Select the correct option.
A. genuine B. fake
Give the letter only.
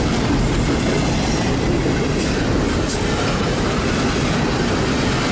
A